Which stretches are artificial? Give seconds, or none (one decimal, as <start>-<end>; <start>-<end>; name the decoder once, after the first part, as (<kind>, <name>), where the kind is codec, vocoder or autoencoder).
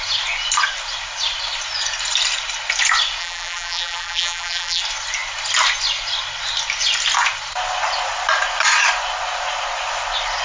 3.2-4.8 (vocoder, BigVGAN v2)